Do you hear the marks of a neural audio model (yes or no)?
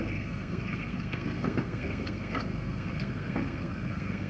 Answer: yes